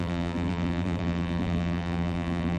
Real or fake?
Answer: fake